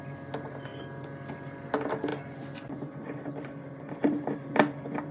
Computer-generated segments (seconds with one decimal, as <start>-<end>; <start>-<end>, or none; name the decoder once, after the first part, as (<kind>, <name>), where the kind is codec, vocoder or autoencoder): 2.1-3.9 (vocoder, BigVGAN v2)